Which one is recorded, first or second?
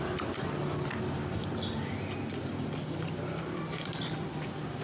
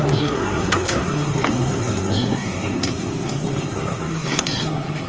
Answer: first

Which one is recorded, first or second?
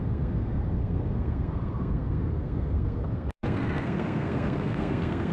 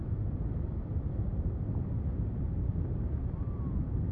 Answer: second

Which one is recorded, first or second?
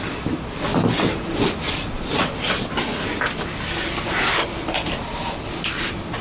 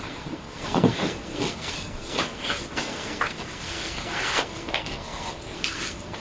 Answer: first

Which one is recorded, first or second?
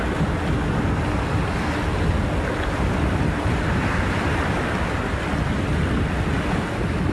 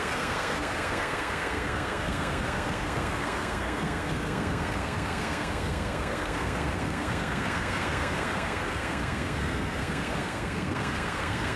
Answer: first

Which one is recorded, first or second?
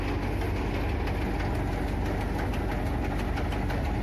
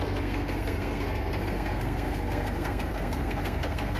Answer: first